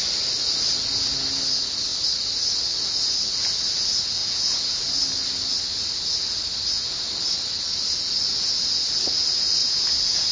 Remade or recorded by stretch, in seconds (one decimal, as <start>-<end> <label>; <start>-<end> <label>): 0.0-4.2 recorded; 4.2-4.9 remade; 4.9-9.6 recorded; 9.6-10.3 remade